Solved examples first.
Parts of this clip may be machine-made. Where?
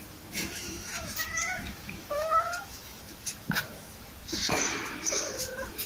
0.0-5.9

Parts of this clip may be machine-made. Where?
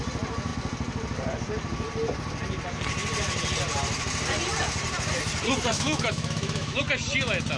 5.7-6.8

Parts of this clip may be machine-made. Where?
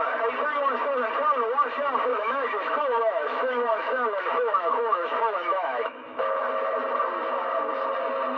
2.1-6.4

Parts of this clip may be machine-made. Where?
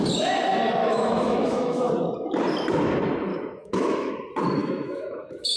0.8-1.9; 3.3-4.1; 4.6-5.6